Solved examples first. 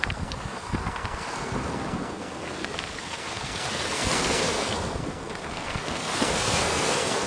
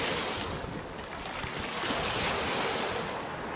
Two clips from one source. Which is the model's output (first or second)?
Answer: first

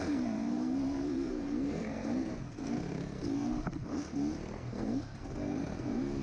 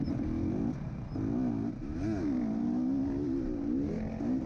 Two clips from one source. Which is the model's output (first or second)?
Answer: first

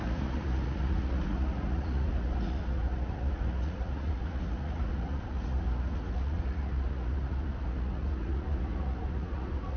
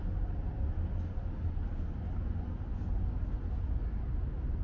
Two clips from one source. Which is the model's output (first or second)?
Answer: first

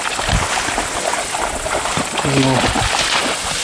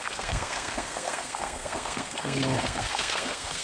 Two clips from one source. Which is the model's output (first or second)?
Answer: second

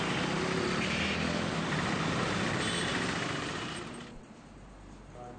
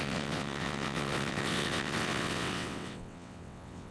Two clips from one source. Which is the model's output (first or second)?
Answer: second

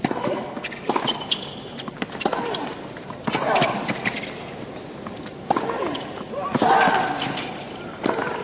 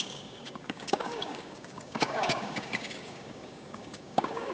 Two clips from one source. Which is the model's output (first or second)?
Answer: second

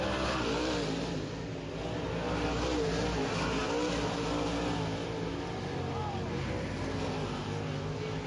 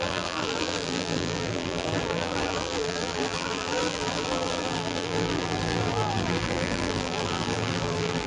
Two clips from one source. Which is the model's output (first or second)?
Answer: second